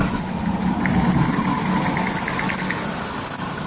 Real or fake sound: real